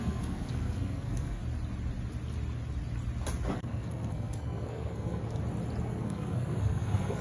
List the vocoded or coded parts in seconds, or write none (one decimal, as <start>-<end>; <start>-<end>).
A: 0.0-1.4; 3.5-5.2; 5.8-7.2